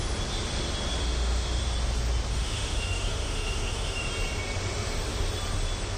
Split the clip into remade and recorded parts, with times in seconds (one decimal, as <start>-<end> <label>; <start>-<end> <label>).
0.0-1.0 recorded; 1.0-1.6 remade; 1.6-2.3 recorded; 2.3-4.1 remade; 4.1-6.0 recorded